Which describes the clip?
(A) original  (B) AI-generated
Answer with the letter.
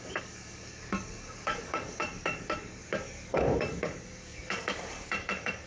B